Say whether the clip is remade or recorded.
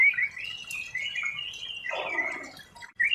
recorded